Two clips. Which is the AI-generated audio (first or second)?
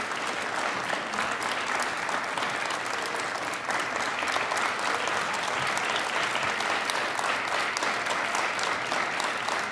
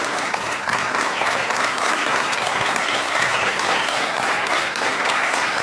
second